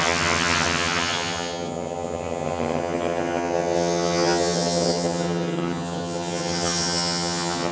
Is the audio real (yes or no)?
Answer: no